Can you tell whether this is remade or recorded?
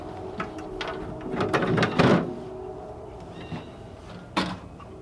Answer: recorded